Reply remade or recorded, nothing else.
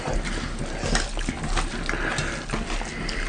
recorded